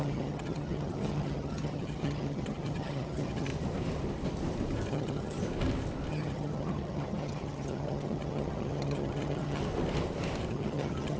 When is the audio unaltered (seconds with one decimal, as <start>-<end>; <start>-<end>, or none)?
3.5-4.9; 5.4-6.1; 9.6-10.5